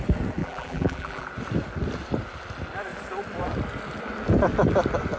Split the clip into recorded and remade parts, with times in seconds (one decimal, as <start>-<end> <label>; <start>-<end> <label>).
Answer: 0.0-0.4 recorded; 0.4-1.3 remade; 1.3-5.2 recorded